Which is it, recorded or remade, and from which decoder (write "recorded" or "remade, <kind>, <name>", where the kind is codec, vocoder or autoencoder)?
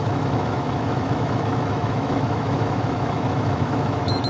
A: remade, autoencoder, DAC-VAE